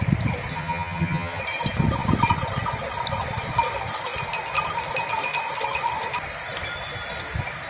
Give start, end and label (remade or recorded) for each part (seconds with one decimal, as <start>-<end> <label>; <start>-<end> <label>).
0.0-0.5 recorded; 0.5-1.4 remade; 1.4-7.7 recorded